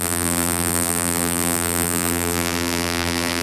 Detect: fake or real fake